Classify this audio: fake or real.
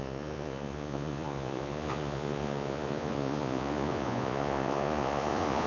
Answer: fake